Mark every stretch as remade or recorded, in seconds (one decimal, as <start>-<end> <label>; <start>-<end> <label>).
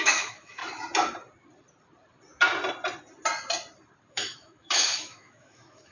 0.0-0.6 remade; 0.6-4.1 recorded; 4.1-5.9 remade